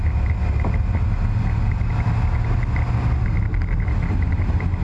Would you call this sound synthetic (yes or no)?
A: no